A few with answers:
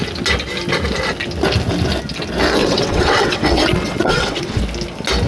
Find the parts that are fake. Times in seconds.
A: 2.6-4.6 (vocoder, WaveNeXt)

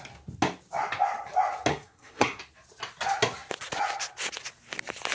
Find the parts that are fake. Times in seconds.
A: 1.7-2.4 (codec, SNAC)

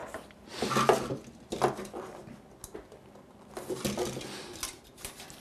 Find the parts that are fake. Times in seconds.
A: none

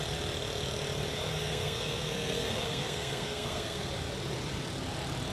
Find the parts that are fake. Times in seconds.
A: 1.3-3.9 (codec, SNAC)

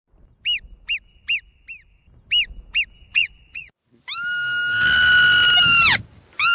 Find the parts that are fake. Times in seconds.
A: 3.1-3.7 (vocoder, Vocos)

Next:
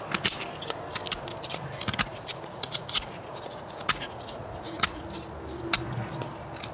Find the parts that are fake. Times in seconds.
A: 2.1-5.0 (vocoder, Vocos)

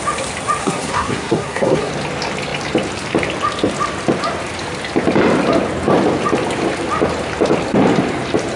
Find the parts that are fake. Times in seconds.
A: 0.6-1.9 (codec, SNAC)

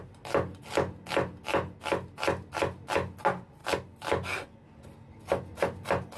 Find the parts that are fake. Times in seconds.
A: none